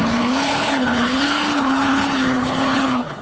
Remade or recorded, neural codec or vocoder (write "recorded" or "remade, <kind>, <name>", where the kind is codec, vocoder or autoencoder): remade, codec, HILCodec